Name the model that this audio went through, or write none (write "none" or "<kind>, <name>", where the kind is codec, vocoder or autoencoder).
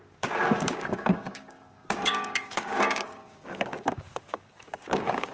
codec, DAC